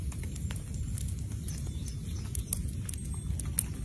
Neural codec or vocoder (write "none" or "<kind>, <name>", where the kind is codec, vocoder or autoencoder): none